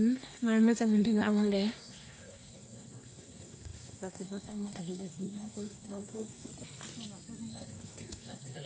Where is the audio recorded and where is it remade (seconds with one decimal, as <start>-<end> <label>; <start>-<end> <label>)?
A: 0.0-6.5 remade; 6.5-7.5 recorded; 7.5-8.7 remade

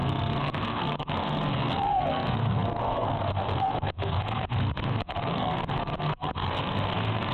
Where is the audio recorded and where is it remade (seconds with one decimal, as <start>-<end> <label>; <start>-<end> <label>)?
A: 0.0-7.3 remade

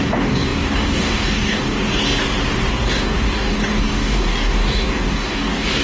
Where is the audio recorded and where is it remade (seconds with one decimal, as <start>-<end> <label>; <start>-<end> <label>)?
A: 0.0-2.0 remade; 2.0-2.7 recorded; 2.7-5.8 remade

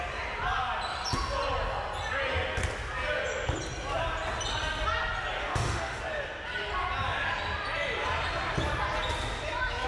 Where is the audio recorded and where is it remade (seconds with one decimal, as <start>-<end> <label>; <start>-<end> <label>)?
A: 0.0-5.4 recorded; 5.4-6.0 remade; 6.0-9.9 recorded

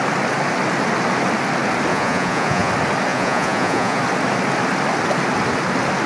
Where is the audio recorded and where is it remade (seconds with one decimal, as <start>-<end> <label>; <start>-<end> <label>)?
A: 0.0-1.9 recorded; 1.9-2.7 remade; 2.7-3.1 recorded; 3.1-4.0 remade; 4.0-6.1 recorded

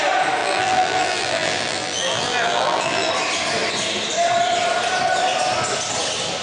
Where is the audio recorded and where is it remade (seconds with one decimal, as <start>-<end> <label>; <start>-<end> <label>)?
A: 0.0-0.4 recorded; 0.4-3.1 remade; 3.1-6.4 recorded

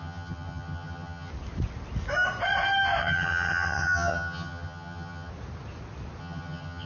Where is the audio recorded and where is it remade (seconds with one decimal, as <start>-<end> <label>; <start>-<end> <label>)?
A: 0.0-1.3 remade; 1.3-3.0 recorded; 3.0-5.3 remade; 5.3-6.2 recorded; 6.2-6.9 remade

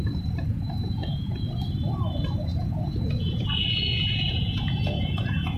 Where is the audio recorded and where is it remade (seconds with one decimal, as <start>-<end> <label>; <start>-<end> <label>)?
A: 0.0-1.0 recorded; 1.0-1.5 remade; 1.5-2.5 recorded; 2.5-5.6 remade